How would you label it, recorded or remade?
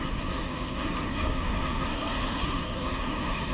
remade